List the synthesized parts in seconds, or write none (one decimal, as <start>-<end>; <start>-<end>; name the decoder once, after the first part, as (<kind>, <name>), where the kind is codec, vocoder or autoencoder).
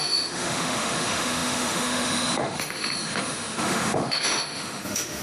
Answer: 0.0-5.2 (autoencoder, DAC-VAE)